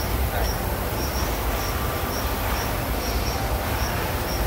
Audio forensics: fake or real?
real